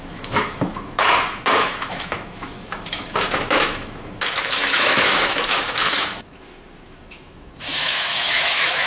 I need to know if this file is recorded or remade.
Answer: remade